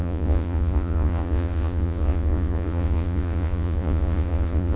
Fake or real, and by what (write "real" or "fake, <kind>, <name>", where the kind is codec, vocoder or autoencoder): fake, vocoder, Vocos